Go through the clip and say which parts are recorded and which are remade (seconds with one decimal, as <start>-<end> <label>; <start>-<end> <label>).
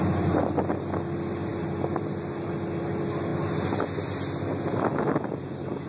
0.0-5.9 recorded